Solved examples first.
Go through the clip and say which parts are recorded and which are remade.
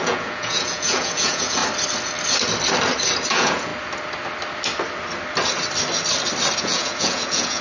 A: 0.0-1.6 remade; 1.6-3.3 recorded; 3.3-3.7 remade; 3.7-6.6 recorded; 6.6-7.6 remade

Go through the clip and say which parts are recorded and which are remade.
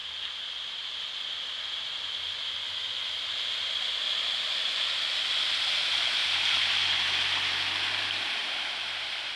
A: 0.0-6.2 recorded; 6.2-7.1 remade; 7.1-9.4 recorded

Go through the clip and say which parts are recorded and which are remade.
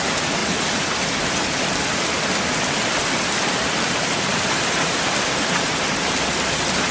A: 0.0-0.4 recorded; 0.4-4.5 remade; 4.5-6.9 recorded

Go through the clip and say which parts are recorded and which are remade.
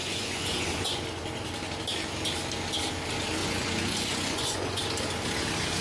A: 0.0-1.0 remade; 1.0-3.4 recorded; 3.4-4.8 remade; 4.8-5.8 recorded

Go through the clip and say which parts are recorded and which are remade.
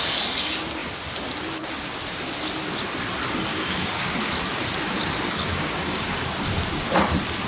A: 0.0-3.5 recorded; 3.5-4.1 remade; 4.1-5.5 recorded; 5.5-6.2 remade; 6.2-7.5 recorded